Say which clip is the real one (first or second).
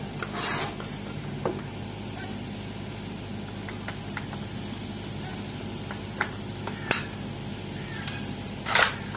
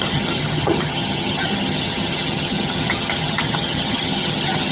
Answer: first